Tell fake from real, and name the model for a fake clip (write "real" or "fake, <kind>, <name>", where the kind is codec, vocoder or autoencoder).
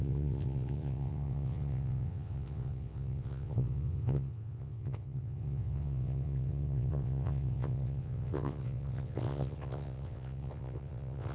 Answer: fake, vocoder, WaveNeXt